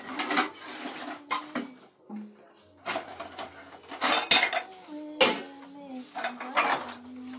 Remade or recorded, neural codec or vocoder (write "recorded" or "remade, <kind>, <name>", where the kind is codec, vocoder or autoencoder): recorded